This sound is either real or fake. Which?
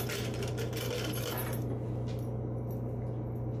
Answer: real